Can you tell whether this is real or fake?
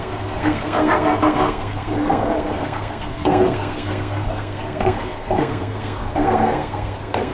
fake